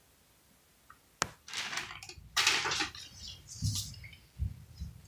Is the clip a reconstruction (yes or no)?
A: no